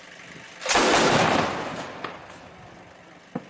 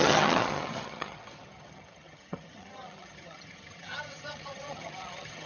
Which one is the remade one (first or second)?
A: second